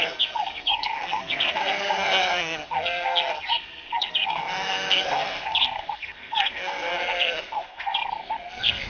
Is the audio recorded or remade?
remade